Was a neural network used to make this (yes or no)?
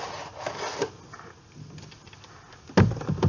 no